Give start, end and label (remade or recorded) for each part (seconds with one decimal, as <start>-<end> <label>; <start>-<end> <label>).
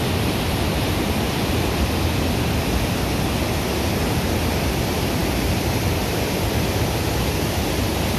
0.0-8.2 recorded